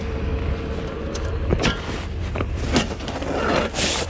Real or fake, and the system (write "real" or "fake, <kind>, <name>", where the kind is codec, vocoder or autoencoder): real